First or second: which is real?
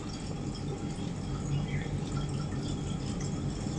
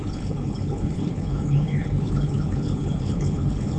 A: first